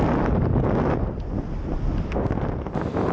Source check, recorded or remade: recorded